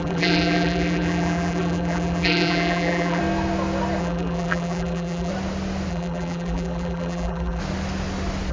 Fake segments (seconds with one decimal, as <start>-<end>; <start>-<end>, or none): 0.0-3.2; 4.0-5.3; 5.9-7.6

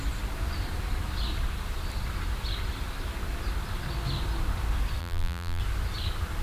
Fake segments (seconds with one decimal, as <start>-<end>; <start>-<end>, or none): 5.0-5.6

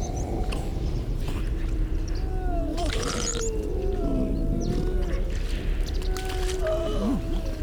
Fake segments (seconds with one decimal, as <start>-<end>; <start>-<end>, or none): 0.7-1.3; 2.7-3.4

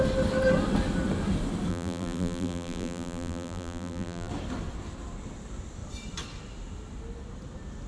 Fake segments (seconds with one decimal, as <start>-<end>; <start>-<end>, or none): 1.7-4.3

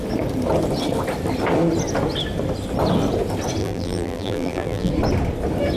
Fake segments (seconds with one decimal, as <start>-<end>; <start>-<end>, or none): 3.6-4.9

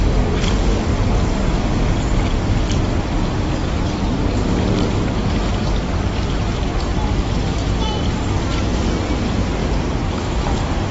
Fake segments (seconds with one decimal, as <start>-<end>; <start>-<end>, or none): 9.6-10.3